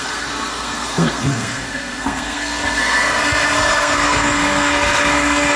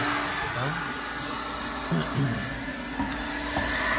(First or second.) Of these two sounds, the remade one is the first